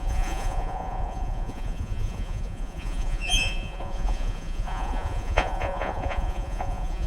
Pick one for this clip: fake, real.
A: fake